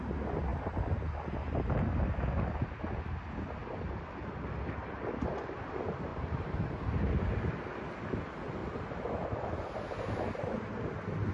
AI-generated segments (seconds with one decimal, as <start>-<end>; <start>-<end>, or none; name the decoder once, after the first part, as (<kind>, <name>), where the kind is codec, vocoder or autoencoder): 0.5-1.2 (vocoder, BigVGAN v2); 6.1-6.7; 8.6-9.7